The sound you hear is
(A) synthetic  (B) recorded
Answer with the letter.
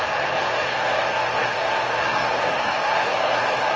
A